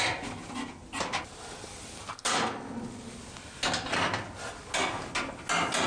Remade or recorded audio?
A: recorded